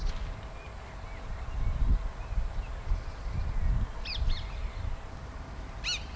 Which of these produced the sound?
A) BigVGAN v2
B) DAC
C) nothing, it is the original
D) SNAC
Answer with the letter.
C